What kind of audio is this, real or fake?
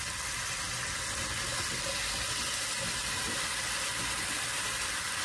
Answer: real